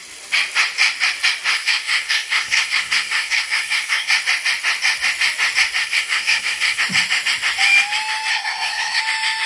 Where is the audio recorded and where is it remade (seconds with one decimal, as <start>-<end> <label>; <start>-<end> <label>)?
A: 0.0-1.5 recorded; 1.5-4.1 remade; 4.1-5.8 recorded; 5.8-6.8 remade; 6.8-8.3 recorded; 8.3-9.0 remade; 9.0-9.5 recorded